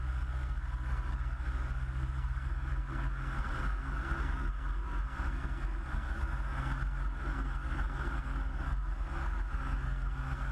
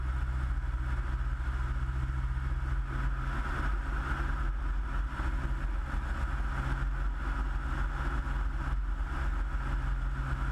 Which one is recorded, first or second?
second